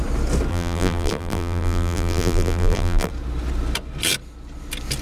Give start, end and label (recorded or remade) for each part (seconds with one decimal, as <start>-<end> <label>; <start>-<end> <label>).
0.0-0.5 recorded; 0.5-3.1 remade; 3.1-5.0 recorded